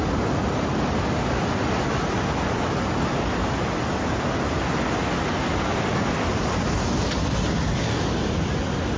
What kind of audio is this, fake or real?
real